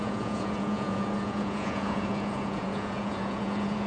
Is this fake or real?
fake